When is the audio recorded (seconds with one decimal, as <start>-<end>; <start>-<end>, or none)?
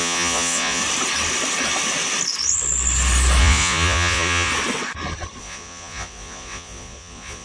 0.8-3.4; 4.5-5.4